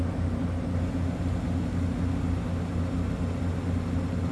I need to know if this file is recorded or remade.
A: recorded